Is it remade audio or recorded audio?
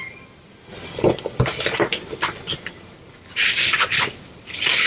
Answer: recorded